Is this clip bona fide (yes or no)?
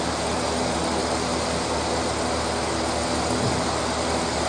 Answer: yes